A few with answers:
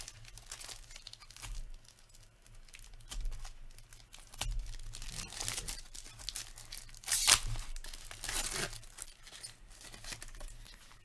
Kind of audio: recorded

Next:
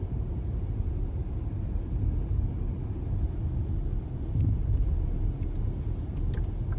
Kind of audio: recorded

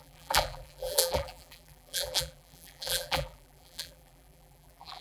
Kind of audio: remade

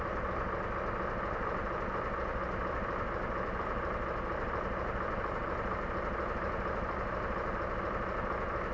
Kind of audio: recorded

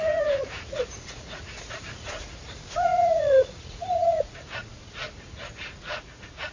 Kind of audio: remade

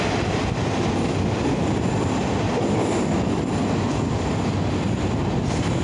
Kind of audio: recorded